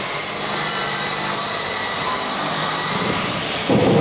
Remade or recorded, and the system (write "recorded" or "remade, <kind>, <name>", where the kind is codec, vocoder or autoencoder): remade, vocoder, BigVGAN v2